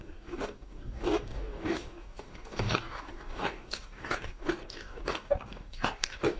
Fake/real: fake